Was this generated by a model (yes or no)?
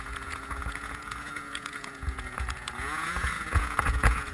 yes